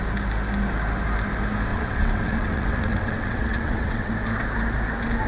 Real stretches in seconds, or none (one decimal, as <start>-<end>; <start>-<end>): 0.0-1.7; 4.1-5.3

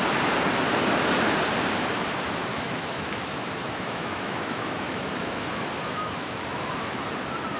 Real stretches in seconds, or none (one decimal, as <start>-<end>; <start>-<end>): 0.0-2.5; 7.1-7.6